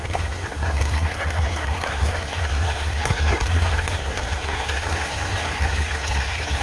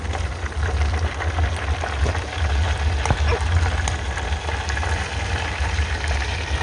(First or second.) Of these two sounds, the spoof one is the first